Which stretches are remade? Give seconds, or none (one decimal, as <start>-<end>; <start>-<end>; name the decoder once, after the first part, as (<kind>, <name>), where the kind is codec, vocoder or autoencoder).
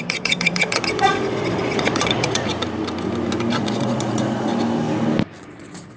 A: 0.0-2.5 (vocoder, Vocos); 3.5-4.5; 5.4-6.0